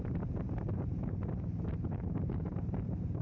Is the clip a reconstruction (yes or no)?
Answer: yes